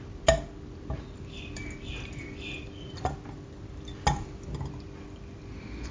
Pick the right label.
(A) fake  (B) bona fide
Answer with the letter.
B